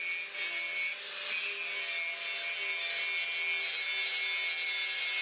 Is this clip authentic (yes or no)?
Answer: yes